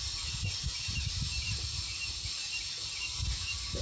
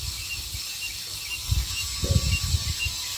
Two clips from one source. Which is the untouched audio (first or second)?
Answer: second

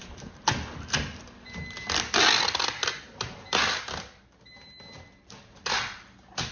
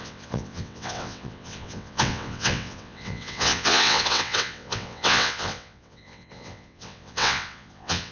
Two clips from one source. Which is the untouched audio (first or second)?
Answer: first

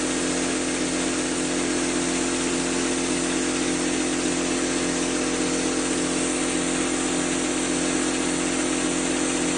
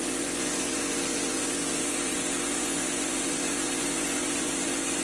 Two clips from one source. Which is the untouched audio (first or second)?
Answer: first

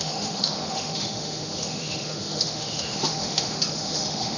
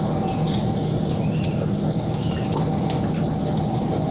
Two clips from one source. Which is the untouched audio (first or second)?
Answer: second